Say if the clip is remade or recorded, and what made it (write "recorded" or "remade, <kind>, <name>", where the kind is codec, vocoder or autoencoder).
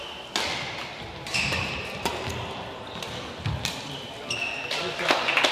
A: recorded